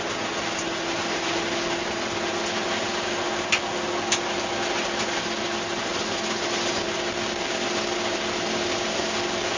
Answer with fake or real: real